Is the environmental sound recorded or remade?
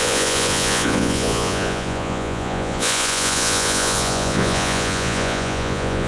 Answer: remade